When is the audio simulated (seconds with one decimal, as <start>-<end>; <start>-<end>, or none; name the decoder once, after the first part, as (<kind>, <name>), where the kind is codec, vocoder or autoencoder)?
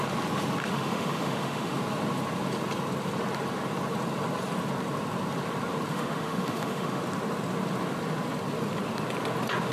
0.6-1.8 (autoencoder, DAC-VAE); 5.9-7.0